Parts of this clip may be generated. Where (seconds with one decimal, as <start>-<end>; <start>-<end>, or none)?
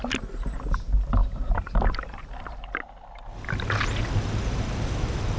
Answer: none